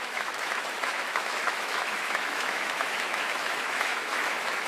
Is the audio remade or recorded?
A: remade